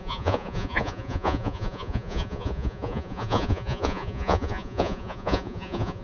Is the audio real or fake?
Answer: fake